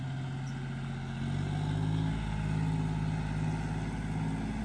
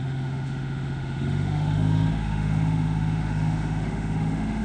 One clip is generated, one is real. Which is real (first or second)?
first